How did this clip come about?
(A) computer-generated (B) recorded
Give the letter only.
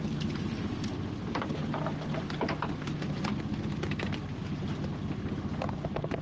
B